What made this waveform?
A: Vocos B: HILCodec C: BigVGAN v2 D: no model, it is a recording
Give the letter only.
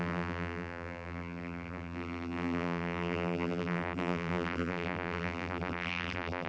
C